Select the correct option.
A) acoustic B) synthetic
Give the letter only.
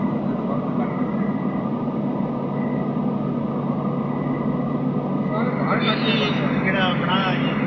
A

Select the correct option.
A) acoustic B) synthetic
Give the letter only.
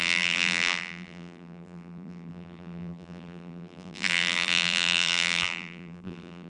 B